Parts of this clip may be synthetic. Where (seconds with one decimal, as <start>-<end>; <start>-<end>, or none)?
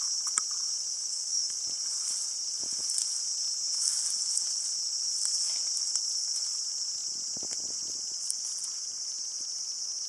0.9-1.6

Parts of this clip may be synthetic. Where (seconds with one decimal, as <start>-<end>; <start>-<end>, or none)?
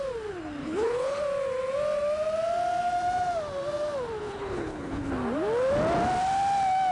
0.6-1.2; 4.2-5.1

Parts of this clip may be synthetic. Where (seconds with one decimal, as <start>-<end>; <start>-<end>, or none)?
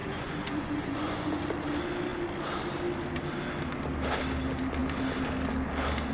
0.0-1.4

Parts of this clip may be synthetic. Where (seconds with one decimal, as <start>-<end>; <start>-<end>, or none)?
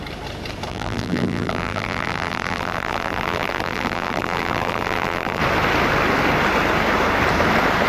0.7-5.4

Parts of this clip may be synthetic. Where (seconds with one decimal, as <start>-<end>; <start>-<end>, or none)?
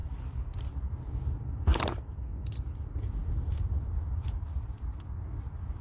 0.0-0.9